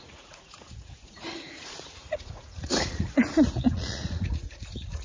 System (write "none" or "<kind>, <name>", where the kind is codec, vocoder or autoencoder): vocoder, Vocos